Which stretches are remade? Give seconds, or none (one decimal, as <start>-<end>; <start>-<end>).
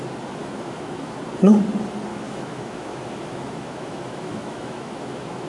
0.4-1.2; 2.1-5.5